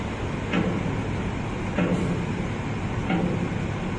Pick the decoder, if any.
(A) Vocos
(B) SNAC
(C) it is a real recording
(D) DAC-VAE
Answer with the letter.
C